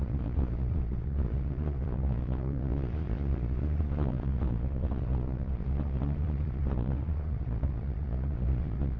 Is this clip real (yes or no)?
no